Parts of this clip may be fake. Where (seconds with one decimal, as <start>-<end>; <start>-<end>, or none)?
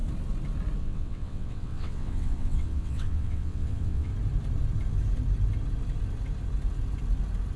0.8-4.1